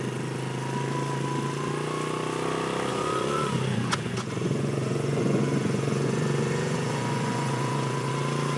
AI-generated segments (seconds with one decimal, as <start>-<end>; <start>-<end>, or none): 2.9-8.1